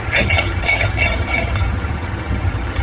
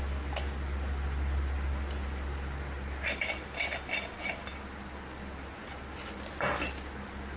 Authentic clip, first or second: second